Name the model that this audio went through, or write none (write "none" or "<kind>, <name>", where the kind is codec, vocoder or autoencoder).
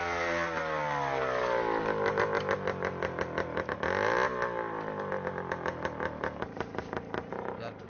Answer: none